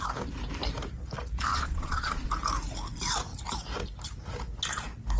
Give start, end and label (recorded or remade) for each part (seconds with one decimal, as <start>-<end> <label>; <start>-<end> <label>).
0.0-1.5 recorded; 1.5-2.3 remade; 2.3-5.2 recorded